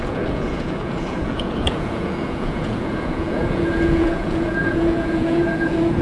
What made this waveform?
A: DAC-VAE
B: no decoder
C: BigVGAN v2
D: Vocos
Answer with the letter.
D